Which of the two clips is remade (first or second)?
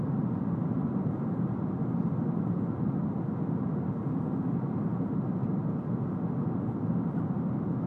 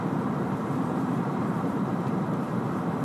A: second